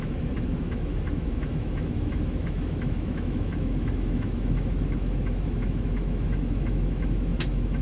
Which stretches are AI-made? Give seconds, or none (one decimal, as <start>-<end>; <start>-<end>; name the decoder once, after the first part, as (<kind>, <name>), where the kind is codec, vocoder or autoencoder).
0.0-7.8 (autoencoder, DAC-VAE)